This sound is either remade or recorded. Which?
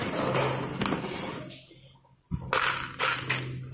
recorded